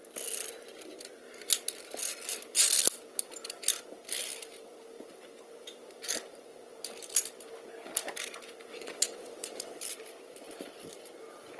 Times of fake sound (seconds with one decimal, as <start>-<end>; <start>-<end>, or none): 8.7-9.8